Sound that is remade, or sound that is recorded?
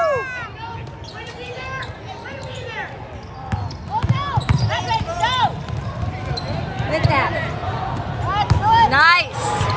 recorded